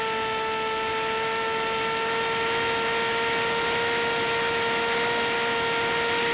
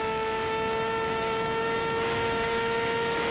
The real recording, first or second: first